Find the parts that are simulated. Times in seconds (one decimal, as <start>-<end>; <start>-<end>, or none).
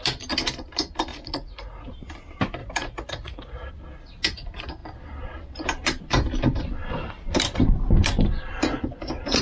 1.1-1.9; 2.6-3.7